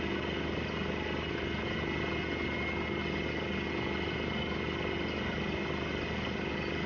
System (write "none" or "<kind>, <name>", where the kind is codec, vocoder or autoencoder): none